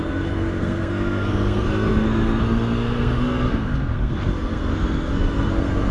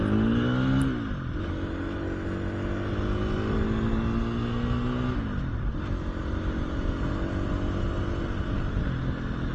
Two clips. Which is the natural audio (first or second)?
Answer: second